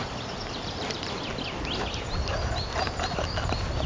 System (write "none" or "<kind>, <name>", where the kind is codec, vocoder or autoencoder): none